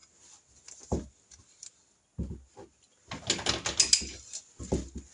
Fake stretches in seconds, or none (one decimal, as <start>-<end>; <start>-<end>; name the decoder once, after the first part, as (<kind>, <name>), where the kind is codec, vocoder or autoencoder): none